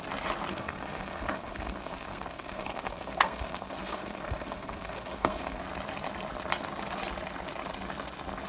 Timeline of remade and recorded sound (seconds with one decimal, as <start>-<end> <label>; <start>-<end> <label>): 0.0-0.5 recorded; 0.5-5.6 remade; 5.6-8.5 recorded

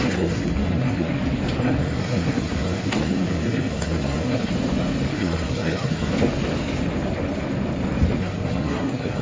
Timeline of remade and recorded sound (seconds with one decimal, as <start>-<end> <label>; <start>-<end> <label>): 0.0-1.1 remade; 1.1-1.6 recorded; 1.6-4.5 remade; 4.5-5.1 recorded; 5.1-6.1 remade; 6.1-8.2 recorded; 8.2-9.2 remade

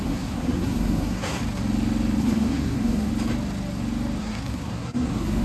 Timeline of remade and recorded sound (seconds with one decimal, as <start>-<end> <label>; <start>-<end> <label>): 0.0-1.4 remade; 1.4-2.2 recorded; 2.2-3.1 remade; 3.1-4.2 recorded; 4.2-5.4 remade

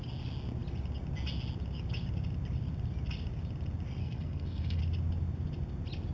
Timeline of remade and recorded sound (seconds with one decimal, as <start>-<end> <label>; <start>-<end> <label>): 0.0-4.0 recorded; 4.0-4.8 remade; 4.8-6.1 recorded

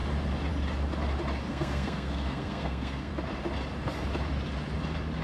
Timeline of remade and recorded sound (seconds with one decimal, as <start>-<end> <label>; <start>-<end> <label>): 0.0-1.5 recorded; 1.5-3.1 remade; 3.1-5.2 recorded

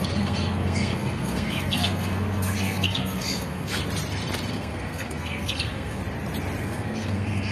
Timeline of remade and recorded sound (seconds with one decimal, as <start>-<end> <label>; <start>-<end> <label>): 0.0-3.8 remade; 3.8-4.5 recorded; 4.5-6.0 remade; 6.0-6.6 recorded; 6.6-7.5 remade